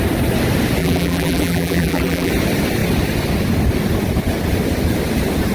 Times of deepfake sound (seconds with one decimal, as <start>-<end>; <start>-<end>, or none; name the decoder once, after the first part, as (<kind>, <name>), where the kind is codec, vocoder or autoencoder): 0.8-2.3 (vocoder, BigVGAN v2)